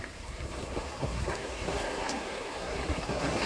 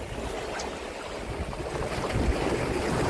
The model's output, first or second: first